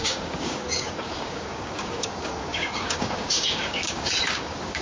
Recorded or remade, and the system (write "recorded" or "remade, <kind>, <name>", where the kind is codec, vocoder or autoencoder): remade, codec, DAC